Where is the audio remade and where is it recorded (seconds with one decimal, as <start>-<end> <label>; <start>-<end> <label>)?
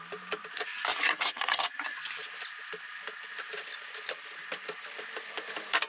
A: 0.0-0.9 recorded; 0.9-1.7 remade; 1.7-5.9 recorded